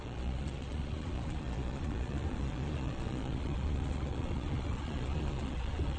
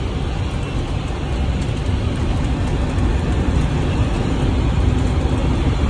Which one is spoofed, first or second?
first